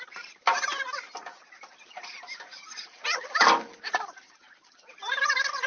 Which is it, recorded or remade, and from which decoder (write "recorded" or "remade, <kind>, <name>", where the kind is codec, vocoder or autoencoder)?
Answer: recorded